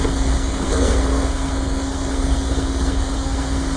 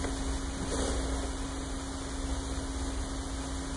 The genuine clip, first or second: second